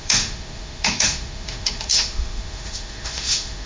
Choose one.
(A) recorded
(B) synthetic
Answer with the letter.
B